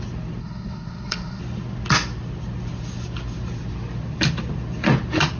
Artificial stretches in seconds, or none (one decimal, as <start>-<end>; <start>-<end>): 0.4-1.4